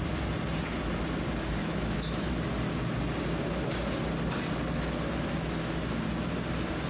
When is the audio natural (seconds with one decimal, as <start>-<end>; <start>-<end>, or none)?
0.0-1.6; 2.3-6.9